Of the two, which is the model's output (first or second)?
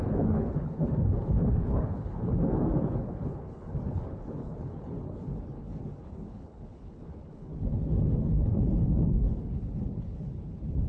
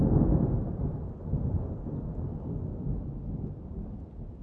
first